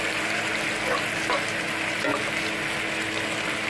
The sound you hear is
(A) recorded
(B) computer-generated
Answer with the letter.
A